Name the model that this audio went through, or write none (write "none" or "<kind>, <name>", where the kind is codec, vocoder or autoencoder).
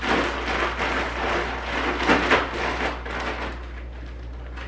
none